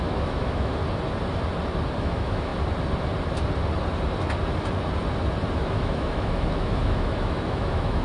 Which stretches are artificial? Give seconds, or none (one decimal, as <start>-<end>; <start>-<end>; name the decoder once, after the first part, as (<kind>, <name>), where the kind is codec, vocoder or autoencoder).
0.0-0.8 (autoencoder, DAC-VAE); 2.0-2.5; 5.5-8.0